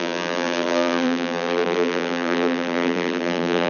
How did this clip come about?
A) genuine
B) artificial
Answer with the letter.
B